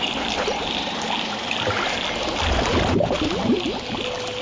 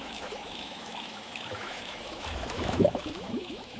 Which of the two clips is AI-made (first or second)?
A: second